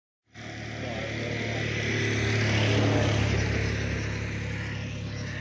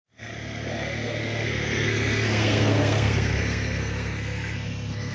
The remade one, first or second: second